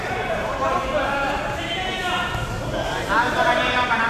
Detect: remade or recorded remade